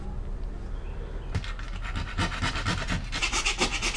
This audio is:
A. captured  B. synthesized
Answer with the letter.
A